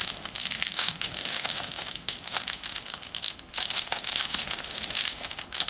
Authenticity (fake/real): fake